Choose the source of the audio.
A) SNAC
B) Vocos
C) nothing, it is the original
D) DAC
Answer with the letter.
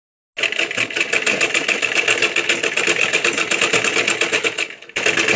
C